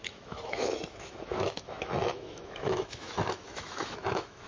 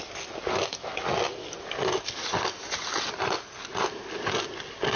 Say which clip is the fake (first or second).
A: first